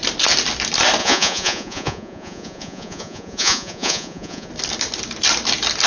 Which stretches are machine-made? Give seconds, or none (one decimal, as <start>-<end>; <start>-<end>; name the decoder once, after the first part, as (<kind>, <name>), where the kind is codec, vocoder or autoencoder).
1.0-4.5 (vocoder, Vocos)

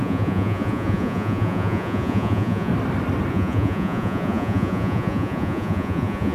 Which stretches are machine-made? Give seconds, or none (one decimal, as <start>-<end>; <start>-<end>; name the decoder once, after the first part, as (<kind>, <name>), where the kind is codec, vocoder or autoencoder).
0.0-2.7 (vocoder, Vocos); 3.3-6.3

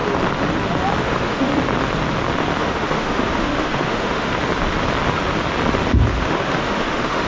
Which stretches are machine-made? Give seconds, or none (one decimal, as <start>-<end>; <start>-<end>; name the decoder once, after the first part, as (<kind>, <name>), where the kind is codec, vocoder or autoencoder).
1.0-1.5 (autoencoder, DAC-VAE); 2.6-4.3; 6.2-7.3

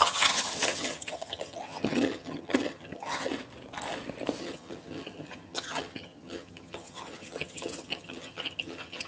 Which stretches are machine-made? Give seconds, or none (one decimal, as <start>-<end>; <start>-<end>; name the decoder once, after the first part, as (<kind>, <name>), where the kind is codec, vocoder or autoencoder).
0.0-3.3 (vocoder, HiFi-GAN); 4.4-9.1

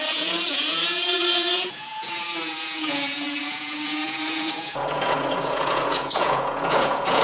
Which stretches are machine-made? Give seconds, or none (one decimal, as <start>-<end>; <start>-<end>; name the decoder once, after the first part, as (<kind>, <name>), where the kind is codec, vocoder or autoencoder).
0.0-7.2 (vocoder, Vocos)

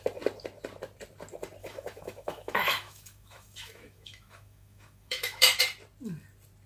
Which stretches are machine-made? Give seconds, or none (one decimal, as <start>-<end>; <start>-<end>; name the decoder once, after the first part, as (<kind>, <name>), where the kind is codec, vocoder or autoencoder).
1.6-5.6 (autoencoder, DAC-VAE)

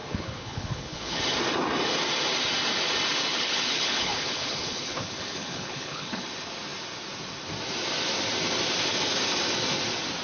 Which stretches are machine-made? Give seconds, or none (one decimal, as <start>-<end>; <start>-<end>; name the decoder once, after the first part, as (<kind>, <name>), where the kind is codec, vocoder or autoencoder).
0.0-1.2 (codec, HILCodec); 3.3-6.2